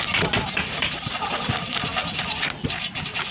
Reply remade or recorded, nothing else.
recorded